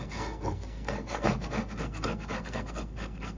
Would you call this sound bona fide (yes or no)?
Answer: no